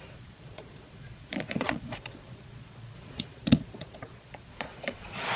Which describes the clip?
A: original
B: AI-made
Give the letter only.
B